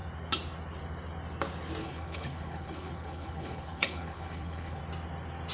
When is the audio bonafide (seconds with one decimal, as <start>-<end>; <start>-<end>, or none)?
0.0-1.8; 4.8-5.5